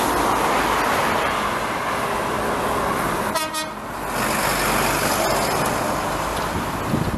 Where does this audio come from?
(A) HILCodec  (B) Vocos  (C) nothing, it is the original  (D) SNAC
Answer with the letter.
C